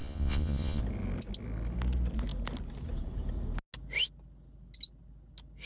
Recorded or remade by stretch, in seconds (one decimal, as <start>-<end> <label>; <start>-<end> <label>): 0.0-0.8 remade; 0.8-5.7 recorded

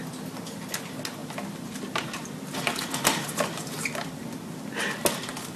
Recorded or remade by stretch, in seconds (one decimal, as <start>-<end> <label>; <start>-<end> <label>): 0.0-5.6 recorded

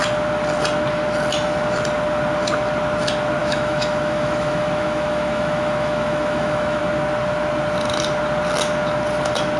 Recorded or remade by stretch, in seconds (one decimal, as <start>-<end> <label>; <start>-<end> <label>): 0.0-3.4 recorded; 3.4-6.8 remade; 6.8-9.6 recorded

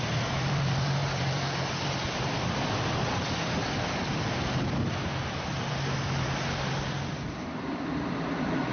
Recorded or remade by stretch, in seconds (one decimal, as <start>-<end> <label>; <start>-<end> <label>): 0.0-8.7 remade